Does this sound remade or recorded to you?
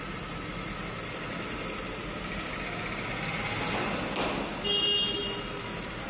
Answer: recorded